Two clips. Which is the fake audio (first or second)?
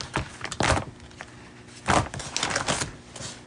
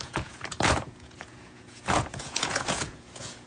second